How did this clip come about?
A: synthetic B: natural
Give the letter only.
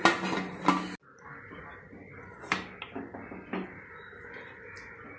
B